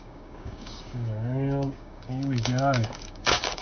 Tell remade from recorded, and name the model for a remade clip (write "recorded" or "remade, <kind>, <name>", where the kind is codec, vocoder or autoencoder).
remade, codec, DAC